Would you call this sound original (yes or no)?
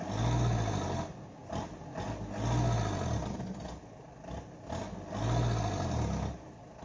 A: yes